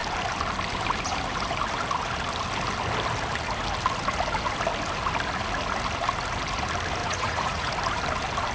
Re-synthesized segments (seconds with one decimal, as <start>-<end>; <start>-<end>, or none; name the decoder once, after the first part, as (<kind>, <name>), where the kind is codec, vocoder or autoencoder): 7.0-7.7 (vocoder, Vocos)